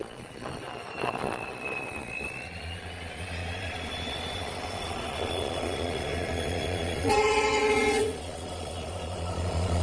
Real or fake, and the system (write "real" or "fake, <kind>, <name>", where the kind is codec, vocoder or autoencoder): fake, vocoder, Vocos